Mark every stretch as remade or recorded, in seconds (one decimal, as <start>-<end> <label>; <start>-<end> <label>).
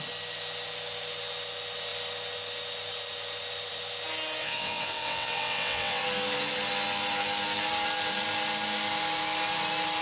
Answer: 0.0-4.4 recorded; 4.4-6.0 remade; 6.0-10.0 recorded